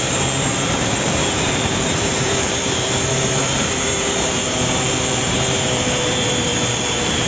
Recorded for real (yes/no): no